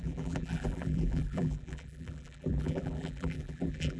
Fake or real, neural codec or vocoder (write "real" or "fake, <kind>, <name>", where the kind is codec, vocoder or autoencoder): fake, vocoder, BigVGAN v2